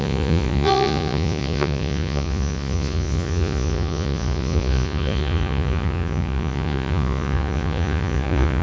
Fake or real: fake